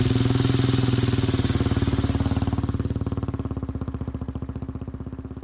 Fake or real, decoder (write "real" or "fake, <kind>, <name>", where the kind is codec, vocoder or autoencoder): real